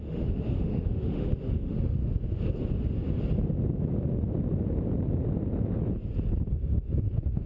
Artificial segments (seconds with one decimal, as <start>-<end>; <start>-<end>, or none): 0.0-2.0; 6.5-7.5